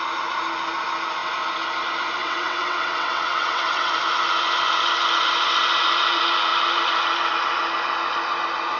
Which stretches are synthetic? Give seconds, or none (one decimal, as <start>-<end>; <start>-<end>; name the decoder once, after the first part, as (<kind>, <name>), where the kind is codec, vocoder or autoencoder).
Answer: 2.2-3.9 (vocoder, WaveNeXt)